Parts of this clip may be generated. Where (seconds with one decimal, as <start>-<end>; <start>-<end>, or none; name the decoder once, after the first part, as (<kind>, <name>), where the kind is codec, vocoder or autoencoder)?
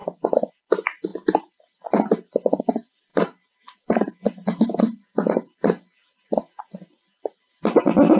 none